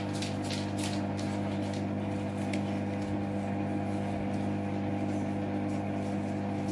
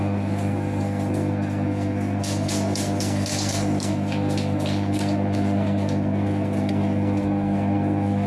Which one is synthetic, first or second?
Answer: second